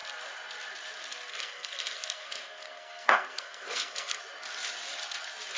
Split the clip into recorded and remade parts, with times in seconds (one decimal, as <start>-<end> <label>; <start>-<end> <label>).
0.0-1.3 recorded; 1.3-4.2 remade; 4.2-5.6 recorded